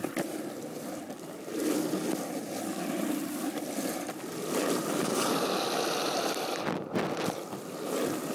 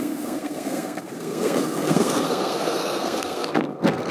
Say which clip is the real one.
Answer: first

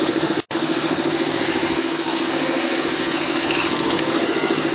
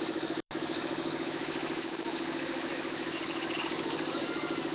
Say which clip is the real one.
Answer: second